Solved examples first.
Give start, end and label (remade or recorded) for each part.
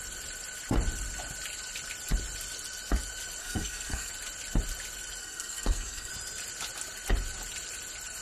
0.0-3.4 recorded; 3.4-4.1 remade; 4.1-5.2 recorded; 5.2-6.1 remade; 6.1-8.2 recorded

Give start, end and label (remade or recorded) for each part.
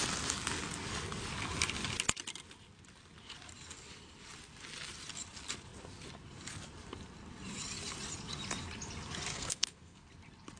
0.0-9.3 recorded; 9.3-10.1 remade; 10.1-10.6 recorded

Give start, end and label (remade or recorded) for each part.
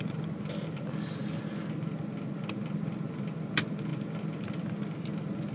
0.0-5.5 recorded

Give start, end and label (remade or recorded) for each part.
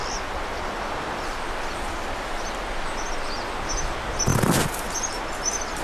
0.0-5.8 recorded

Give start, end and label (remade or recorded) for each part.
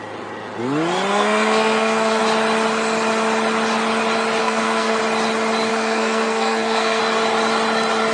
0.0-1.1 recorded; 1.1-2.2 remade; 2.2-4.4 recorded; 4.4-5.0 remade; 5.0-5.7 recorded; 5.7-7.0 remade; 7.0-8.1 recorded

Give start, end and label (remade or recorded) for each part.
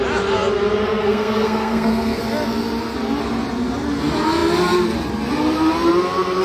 0.0-0.9 recorded; 0.9-2.2 remade; 2.2-6.4 recorded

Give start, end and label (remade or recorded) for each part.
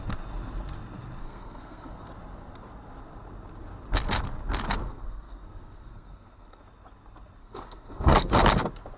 0.0-1.2 recorded; 1.2-2.1 remade; 2.1-4.8 recorded; 4.8-6.6 remade; 6.6-7.4 recorded; 7.4-8.3 remade; 8.3-9.0 recorded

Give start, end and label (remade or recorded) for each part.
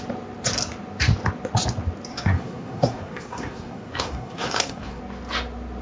0.0-2.1 recorded; 2.1-5.0 remade; 5.0-5.8 recorded